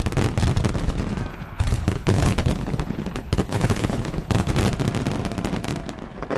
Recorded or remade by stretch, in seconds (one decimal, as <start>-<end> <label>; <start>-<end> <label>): 0.0-1.3 recorded; 1.3-4.5 remade; 4.5-6.4 recorded